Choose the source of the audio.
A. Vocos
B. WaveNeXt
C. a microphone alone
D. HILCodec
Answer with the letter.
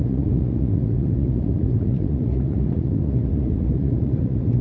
A